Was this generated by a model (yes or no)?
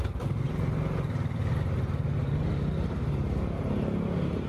no